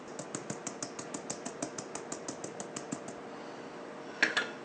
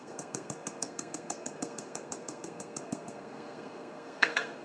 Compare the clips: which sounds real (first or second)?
first